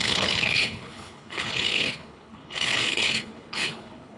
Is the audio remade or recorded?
remade